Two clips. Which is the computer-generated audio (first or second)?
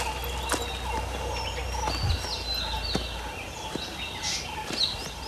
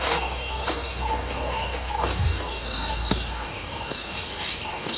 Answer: second